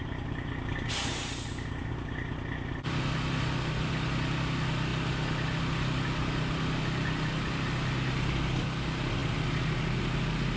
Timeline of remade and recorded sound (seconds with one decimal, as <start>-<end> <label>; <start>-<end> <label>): 0.0-10.6 recorded